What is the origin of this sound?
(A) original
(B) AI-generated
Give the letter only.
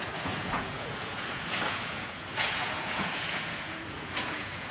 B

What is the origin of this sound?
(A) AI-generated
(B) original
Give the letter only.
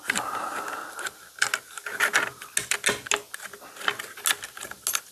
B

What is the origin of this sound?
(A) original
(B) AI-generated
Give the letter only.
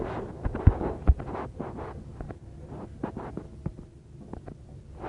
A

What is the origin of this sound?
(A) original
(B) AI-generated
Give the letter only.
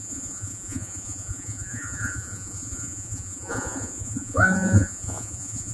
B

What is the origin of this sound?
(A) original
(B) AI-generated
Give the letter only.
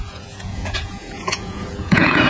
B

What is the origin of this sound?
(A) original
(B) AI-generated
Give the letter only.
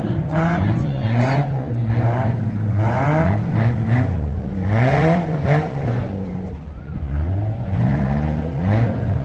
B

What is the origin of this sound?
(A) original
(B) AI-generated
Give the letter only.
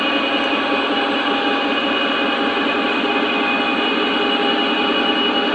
A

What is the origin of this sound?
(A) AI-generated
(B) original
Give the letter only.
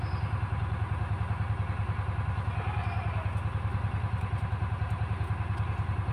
B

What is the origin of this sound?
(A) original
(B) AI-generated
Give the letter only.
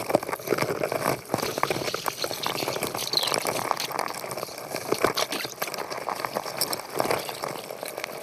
A